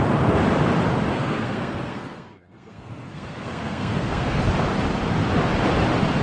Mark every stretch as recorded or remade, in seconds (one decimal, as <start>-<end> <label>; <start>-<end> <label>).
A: 0.0-1.1 recorded; 1.1-4.4 remade; 4.4-6.2 recorded

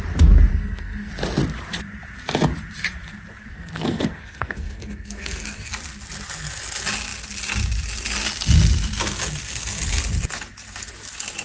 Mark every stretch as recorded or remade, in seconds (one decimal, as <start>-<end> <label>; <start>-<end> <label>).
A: 0.0-0.5 recorded; 0.5-1.1 remade; 1.1-3.4 recorded; 3.4-5.7 remade; 5.7-11.4 recorded

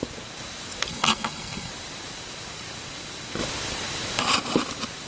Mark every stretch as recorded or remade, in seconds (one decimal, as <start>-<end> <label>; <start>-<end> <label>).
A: 0.0-0.9 recorded; 0.9-1.7 remade; 1.7-5.1 recorded

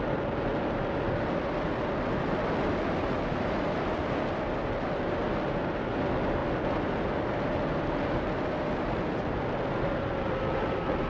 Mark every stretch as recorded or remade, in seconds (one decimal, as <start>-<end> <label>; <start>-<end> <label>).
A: 0.0-11.1 recorded